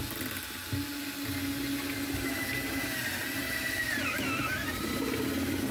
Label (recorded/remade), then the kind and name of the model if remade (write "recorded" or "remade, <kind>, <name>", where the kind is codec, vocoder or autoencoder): recorded